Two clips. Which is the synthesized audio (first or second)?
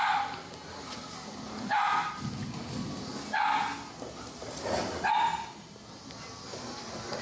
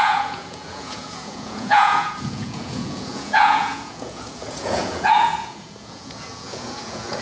second